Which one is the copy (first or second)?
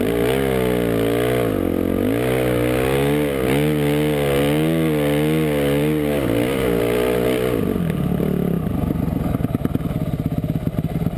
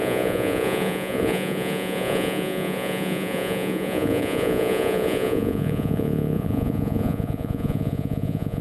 second